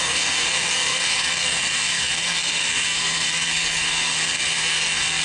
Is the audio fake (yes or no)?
yes